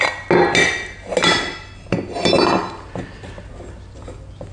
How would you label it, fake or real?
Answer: real